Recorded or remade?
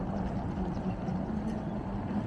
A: recorded